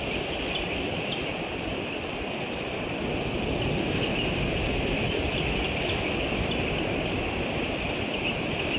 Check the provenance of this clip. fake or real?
real